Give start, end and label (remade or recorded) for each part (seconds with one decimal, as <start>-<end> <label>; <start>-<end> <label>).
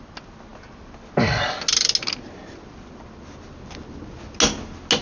0.0-5.0 recorded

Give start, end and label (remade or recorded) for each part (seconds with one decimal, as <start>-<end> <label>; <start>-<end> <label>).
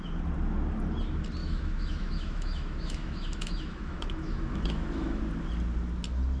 0.0-1.4 recorded; 1.4-5.2 remade; 5.2-6.4 recorded